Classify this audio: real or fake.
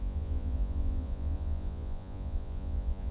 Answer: fake